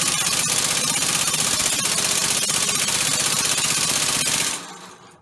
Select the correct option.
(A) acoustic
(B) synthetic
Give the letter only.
A